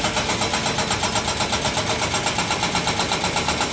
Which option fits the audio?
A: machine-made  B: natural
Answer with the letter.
B